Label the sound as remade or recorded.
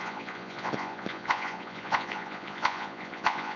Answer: remade